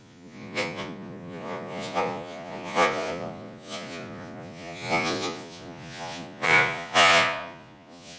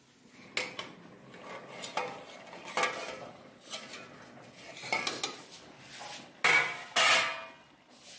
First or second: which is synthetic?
first